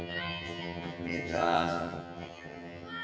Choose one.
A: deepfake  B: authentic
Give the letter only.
A